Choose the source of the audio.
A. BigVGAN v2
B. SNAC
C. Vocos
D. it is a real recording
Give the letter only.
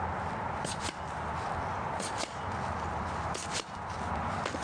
D